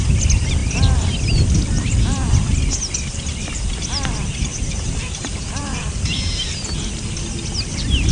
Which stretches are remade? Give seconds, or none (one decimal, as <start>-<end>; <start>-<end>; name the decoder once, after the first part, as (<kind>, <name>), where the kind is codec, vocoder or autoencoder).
4.5-6.2 (vocoder, BigVGAN v2)